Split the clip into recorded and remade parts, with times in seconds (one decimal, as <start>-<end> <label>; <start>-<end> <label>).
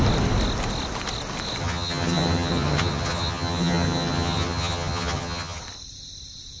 0.0-1.6 recorded; 1.6-5.6 remade; 5.6-6.6 recorded